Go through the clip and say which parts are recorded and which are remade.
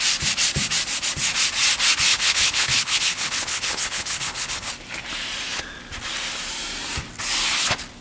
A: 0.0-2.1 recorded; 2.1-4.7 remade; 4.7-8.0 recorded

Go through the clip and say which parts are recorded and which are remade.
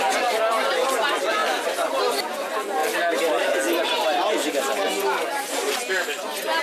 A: 0.0-6.6 recorded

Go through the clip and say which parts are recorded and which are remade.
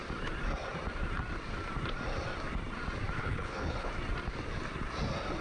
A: 0.0-3.2 recorded; 3.2-3.9 remade; 3.9-5.4 recorded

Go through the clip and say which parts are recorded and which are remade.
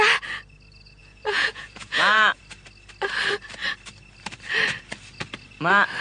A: 0.0-1.0 recorded; 1.0-2.4 remade; 2.4-6.0 recorded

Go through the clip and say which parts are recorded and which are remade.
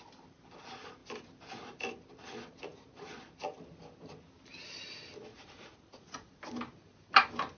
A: 0.0-5.3 recorded; 5.3-6.4 remade; 6.4-7.6 recorded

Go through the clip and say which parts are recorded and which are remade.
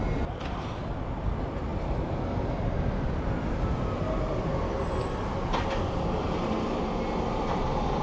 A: 0.0-8.0 recorded